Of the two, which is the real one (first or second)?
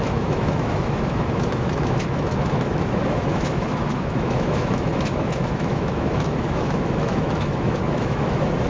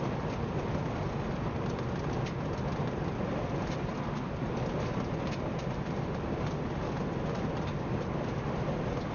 second